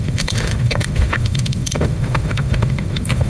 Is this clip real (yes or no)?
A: no